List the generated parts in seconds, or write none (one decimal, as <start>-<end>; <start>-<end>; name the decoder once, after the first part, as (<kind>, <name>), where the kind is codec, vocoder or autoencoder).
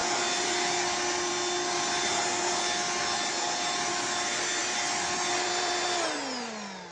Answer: 4.6-5.8 (vocoder, BigVGAN v2)